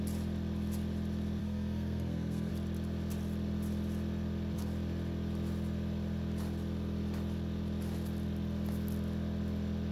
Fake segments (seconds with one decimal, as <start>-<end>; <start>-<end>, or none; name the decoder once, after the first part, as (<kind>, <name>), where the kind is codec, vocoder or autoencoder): 1.4-2.5 (codec, SNAC)

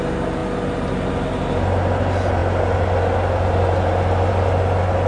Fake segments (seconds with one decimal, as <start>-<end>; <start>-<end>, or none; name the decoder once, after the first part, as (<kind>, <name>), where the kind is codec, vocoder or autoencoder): none

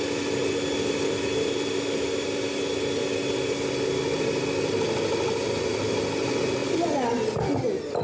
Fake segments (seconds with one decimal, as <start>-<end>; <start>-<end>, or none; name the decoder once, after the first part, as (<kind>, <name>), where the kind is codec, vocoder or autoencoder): none